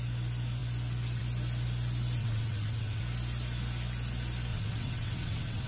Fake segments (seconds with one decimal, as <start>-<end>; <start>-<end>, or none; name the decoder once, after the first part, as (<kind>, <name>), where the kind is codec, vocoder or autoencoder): 2.2-3.0 (vocoder, WaveNeXt); 4.5-5.7

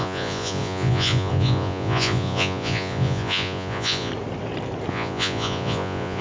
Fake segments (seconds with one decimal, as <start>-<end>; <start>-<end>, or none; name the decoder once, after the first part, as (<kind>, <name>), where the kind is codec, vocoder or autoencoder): 0.0-4.1 (vocoder, Vocos); 4.9-6.2